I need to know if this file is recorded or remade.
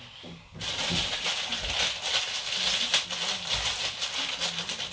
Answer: recorded